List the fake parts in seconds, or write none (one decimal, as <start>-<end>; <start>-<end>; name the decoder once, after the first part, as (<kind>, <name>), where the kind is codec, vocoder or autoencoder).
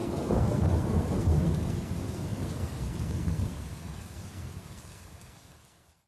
0.0-6.1 (codec, SNAC)